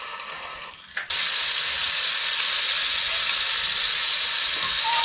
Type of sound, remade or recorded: recorded